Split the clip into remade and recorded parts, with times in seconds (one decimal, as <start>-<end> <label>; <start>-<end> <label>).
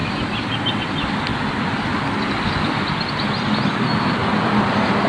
0.0-1.3 remade; 1.3-4.4 recorded; 4.4-5.1 remade